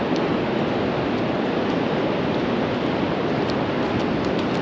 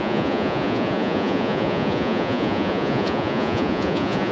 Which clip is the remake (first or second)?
second